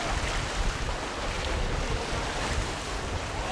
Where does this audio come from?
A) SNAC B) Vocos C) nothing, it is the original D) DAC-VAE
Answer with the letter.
C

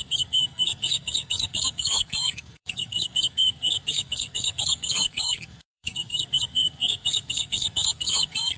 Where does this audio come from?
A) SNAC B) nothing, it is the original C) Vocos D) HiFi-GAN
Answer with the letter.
A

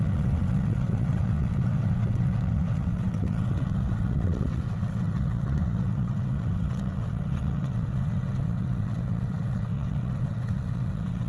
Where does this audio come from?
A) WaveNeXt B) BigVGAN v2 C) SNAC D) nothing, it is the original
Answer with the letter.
A